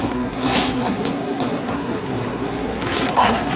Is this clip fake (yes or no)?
yes